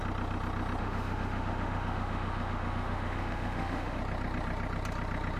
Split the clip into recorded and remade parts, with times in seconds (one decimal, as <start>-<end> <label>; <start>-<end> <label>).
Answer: 0.0-0.8 recorded; 0.8-4.0 remade; 4.0-5.4 recorded